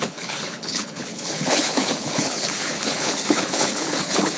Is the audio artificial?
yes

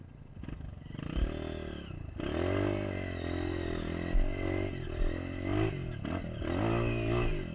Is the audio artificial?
no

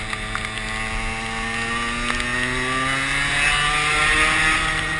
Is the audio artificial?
no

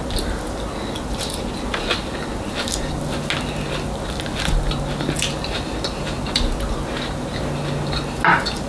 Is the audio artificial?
no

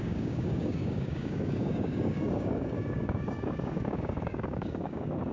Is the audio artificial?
yes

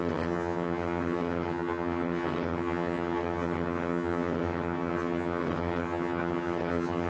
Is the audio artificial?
yes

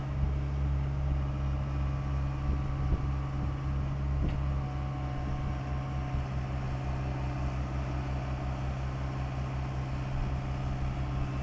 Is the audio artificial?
no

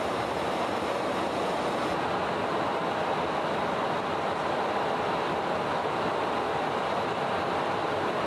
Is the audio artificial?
no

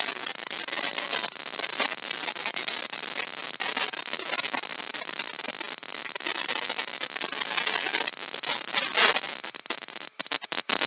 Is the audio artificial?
no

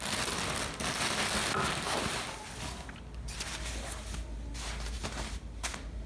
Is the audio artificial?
no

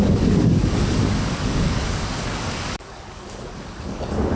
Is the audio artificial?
yes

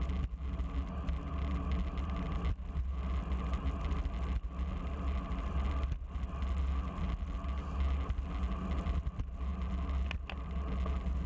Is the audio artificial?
no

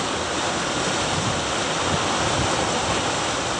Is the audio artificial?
no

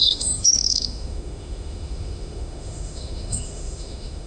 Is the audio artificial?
yes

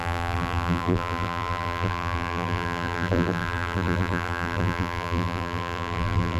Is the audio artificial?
yes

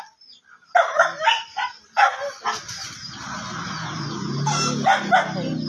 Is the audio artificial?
no